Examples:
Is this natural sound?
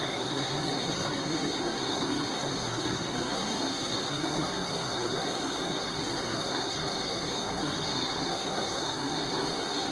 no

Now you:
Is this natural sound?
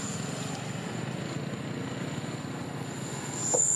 yes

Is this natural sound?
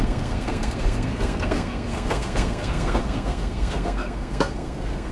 no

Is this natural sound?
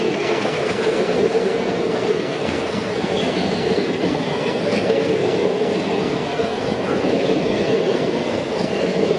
no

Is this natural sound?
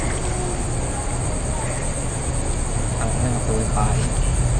yes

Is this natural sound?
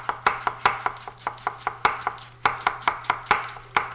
yes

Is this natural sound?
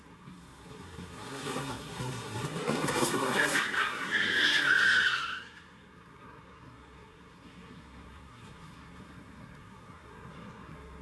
no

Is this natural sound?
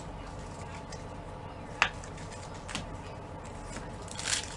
yes